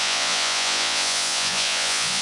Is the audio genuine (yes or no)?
no